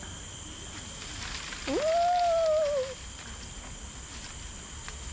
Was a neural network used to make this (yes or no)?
no